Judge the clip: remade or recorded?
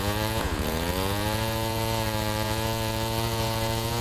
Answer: remade